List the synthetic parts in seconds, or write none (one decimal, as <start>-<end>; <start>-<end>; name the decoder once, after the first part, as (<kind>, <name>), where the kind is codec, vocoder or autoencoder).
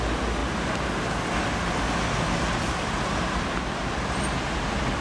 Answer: none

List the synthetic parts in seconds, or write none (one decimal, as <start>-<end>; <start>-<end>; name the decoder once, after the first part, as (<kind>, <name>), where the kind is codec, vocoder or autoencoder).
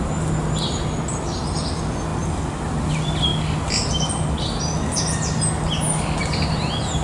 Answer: none